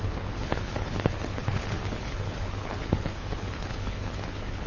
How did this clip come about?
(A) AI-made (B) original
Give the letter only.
A